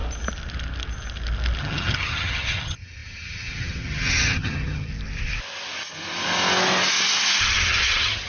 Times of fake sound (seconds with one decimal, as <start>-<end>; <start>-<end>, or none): 1.6-4.9; 7.4-8.3